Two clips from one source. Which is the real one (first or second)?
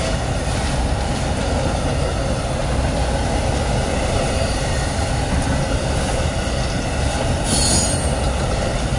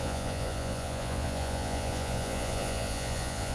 first